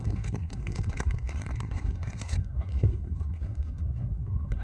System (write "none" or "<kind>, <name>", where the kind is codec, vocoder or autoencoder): codec, SNAC